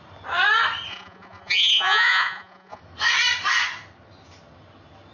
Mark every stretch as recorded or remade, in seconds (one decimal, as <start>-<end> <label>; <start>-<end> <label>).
0.0-0.9 recorded; 0.9-2.8 remade; 2.8-5.1 recorded